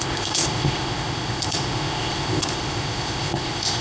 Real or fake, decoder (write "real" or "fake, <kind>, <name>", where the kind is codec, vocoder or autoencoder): fake, codec, ZipCodec